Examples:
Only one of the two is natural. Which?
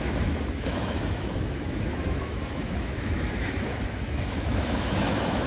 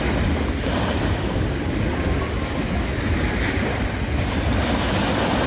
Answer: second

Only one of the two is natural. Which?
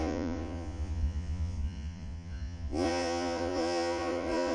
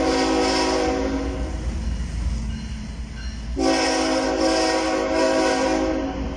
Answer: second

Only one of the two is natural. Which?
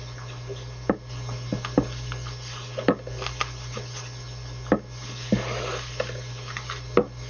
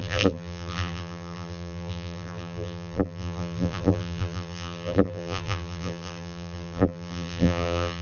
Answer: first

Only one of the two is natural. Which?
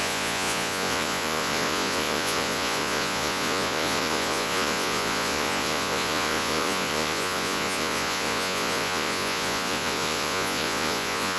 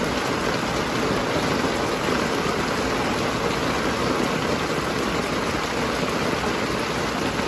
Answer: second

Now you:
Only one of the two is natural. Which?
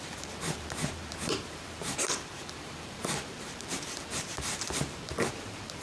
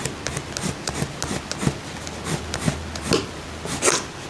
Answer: second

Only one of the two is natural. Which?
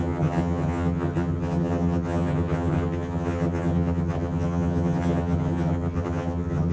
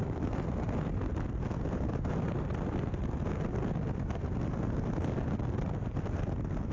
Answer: second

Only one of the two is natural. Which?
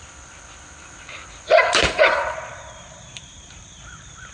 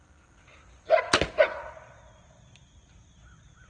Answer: second